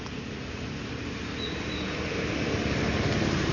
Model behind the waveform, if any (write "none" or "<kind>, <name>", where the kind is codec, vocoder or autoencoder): none